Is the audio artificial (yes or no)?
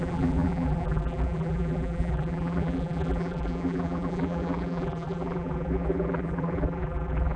yes